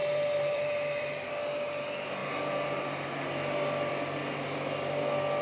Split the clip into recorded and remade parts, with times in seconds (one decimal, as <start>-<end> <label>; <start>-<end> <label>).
0.0-1.3 remade; 1.3-5.4 recorded